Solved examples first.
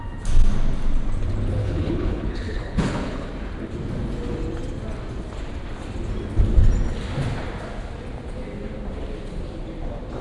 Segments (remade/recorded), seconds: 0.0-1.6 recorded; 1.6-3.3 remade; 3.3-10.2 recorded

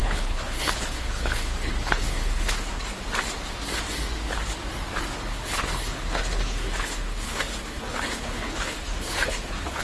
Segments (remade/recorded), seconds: 0.0-2.9 remade; 2.9-5.3 recorded; 5.3-9.8 remade